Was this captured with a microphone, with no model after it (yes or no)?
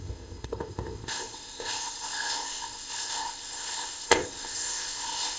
no